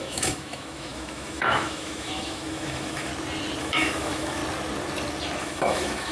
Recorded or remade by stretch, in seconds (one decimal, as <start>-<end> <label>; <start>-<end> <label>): 0.0-3.1 remade; 3.1-3.6 recorded; 3.6-4.4 remade; 4.4-5.4 recorded; 5.4-6.1 remade